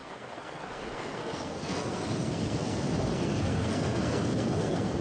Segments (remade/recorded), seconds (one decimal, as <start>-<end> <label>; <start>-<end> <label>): 0.0-5.0 remade